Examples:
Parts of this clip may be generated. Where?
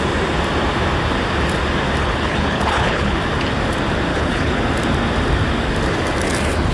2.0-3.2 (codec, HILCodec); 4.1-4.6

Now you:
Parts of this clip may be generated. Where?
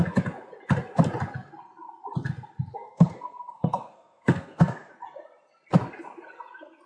2.7-4.9 (codec, SNAC)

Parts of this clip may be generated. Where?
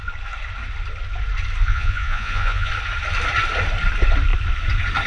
1.7-2.7 (vocoder, Vocos)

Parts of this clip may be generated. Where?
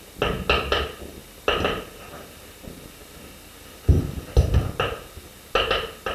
none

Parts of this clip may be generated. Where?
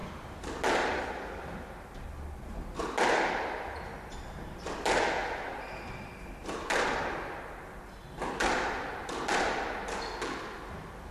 none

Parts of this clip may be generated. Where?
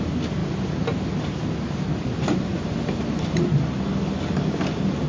none